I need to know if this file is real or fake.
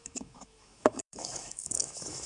fake